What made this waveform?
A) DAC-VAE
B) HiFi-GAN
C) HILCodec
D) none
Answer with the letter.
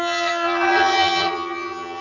B